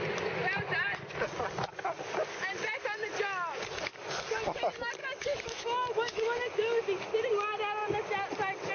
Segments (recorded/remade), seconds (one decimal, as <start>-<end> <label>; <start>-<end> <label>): 0.0-5.0 recorded; 5.0-6.8 remade; 6.8-8.7 recorded